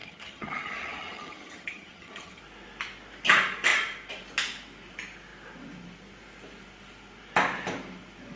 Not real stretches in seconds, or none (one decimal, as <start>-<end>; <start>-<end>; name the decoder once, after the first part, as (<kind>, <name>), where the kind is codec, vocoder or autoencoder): 0.0-2.4 (vocoder, HiFi-GAN)